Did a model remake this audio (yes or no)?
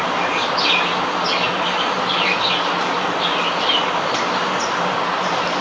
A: no